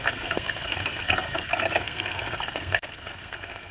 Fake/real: fake